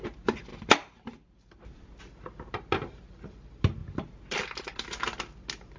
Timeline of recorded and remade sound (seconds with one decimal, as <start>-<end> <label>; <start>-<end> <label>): 0.0-0.5 recorded; 0.5-2.0 remade; 2.0-3.8 recorded; 3.8-4.4 remade; 4.4-5.8 recorded

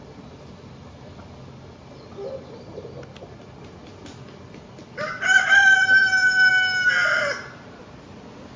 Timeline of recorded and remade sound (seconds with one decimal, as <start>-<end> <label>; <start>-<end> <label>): 0.0-3.8 recorded; 3.8-6.5 remade; 6.5-8.6 recorded